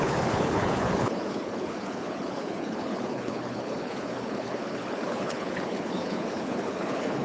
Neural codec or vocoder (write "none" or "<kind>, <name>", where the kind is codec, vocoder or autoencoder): codec, HILCodec